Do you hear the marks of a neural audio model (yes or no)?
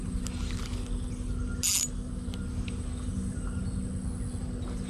no